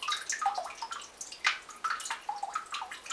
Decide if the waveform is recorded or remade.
recorded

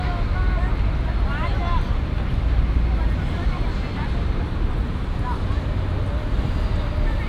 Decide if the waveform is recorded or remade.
recorded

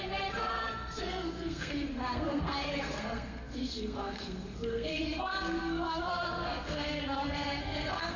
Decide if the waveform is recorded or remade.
remade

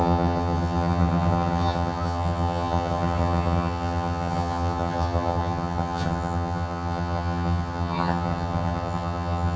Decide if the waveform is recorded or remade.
remade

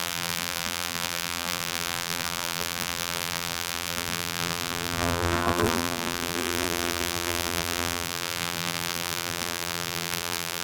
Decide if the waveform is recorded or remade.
remade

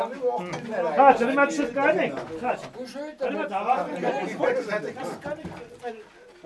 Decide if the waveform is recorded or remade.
recorded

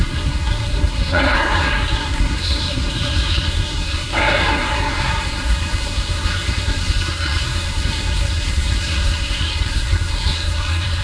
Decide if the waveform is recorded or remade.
remade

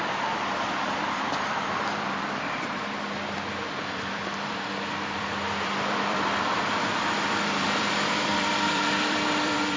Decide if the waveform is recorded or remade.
remade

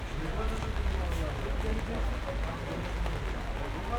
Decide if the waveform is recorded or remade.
recorded